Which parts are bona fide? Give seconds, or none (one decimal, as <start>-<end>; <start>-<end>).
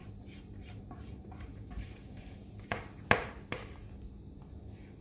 3.0-5.0